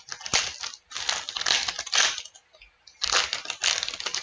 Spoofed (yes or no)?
no